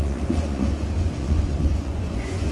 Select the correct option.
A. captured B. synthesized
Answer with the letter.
B